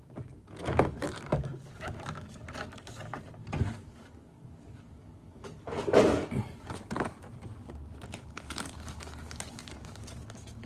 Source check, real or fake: fake